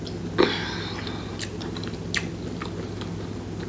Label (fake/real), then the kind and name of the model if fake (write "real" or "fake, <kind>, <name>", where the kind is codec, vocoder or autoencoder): real